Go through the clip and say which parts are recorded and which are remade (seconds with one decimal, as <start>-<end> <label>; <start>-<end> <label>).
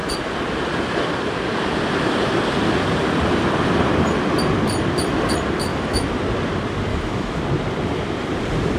0.0-5.7 recorded; 5.7-6.2 remade; 6.2-6.9 recorded; 6.9-7.4 remade; 7.4-8.8 recorded